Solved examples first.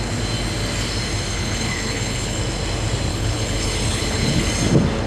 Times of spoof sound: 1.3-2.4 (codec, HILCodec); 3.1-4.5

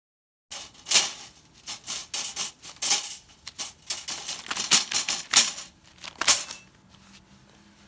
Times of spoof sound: none